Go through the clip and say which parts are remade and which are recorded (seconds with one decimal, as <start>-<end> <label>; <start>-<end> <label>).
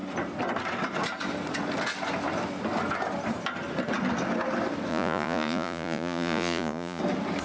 0.0-4.9 recorded; 4.9-7.0 remade; 7.0-7.4 recorded